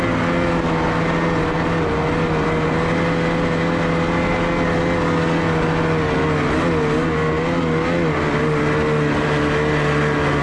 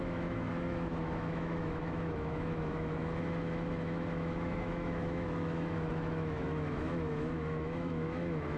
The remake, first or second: second